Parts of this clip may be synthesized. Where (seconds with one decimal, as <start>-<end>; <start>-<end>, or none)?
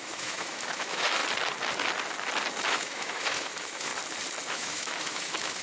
0.0-1.2; 2.7-3.9; 4.5-5.6